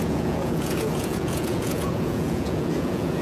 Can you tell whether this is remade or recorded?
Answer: remade